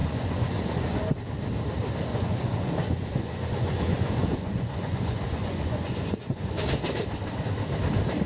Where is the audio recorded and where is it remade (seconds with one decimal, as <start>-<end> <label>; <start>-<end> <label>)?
0.0-1.1 remade; 1.1-2.1 recorded; 2.1-6.5 remade; 6.5-8.3 recorded